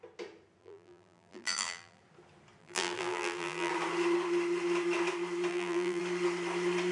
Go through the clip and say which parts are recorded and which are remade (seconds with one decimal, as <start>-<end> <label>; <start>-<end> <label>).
0.0-0.6 recorded; 0.6-2.0 remade; 2.0-2.6 recorded; 2.6-3.7 remade; 3.7-5.5 recorded; 5.5-6.0 remade; 6.0-6.9 recorded